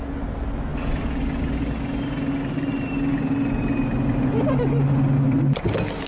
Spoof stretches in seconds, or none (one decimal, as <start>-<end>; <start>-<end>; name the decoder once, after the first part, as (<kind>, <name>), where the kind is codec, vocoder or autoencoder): none